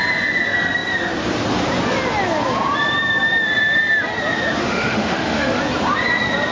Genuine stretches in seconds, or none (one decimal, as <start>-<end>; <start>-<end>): 0.0-4.6; 5.6-6.5

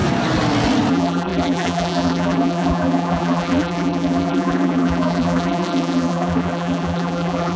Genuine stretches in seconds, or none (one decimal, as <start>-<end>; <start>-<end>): 0.0-0.9

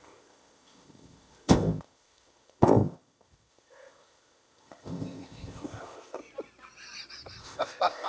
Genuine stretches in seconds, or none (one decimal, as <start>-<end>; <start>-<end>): 6.2-7.4

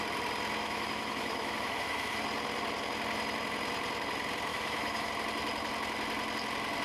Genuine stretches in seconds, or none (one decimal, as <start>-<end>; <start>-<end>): 0.0-0.6; 2.2-4.5; 5.1-6.8

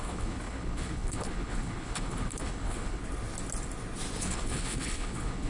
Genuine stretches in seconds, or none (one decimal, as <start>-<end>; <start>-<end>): 3.0-4.2

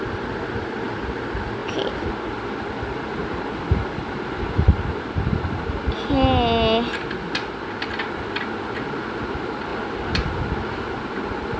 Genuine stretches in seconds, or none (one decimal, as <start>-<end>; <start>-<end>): 0.0-1.6; 2.1-3.2; 5.9-9.7; 10.4-11.6

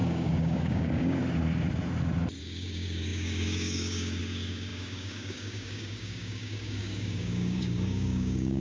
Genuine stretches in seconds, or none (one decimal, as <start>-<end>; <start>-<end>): 1.2-2.4